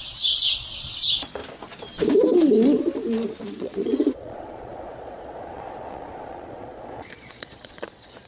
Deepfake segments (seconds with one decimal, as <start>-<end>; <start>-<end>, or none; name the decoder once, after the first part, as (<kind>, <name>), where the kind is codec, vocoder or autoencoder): 0.0-1.4 (vocoder, Vocos); 3.5-8.3